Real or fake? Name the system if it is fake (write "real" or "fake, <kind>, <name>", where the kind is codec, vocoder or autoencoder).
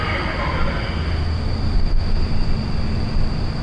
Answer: real